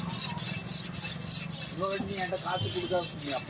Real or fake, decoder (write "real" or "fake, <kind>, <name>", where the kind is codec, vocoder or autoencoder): real